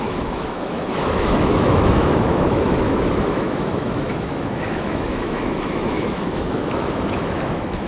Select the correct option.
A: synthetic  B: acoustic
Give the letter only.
A